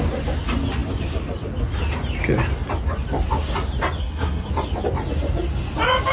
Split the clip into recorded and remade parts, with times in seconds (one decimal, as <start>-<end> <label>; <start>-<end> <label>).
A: 0.0-4.0 recorded; 4.0-4.5 remade; 4.5-6.1 recorded